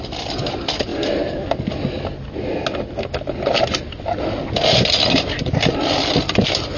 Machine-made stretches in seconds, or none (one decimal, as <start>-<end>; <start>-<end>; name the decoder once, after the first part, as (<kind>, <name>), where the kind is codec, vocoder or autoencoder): none